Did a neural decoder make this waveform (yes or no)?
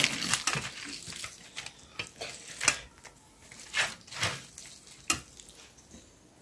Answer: no